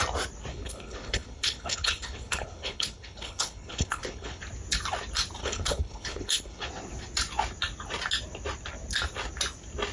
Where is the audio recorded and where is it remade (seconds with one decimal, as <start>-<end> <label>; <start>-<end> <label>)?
0.0-0.5 recorded; 0.5-4.4 remade; 4.4-5.4 recorded; 5.4-6.7 remade; 6.7-9.9 recorded